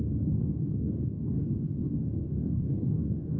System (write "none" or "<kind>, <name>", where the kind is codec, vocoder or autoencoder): codec, DAC